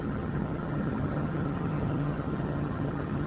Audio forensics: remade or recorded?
remade